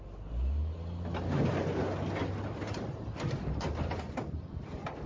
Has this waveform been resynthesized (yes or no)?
no